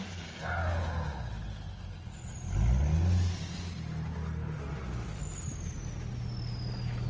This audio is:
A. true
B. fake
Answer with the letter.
A